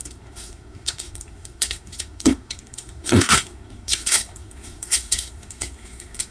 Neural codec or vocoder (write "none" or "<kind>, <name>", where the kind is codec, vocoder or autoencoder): codec, SNAC